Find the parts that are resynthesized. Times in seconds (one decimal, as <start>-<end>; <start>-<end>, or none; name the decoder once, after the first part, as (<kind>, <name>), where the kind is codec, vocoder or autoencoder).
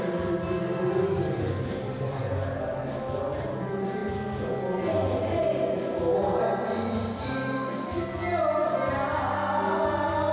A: none